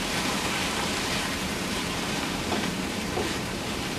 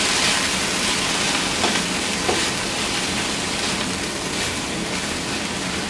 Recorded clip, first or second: second